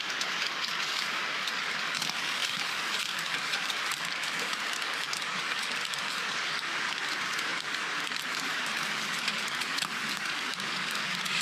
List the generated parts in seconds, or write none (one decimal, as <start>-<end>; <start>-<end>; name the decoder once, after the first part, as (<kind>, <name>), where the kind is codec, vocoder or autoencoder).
0.0-11.4 (codec, DAC)